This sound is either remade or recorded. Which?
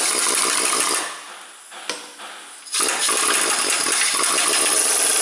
recorded